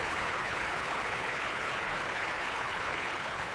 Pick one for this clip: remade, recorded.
remade